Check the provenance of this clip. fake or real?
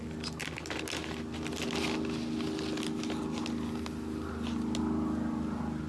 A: real